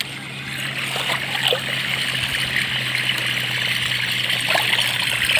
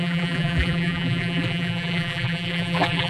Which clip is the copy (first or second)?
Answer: second